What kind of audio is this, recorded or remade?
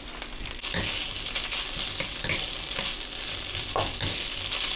recorded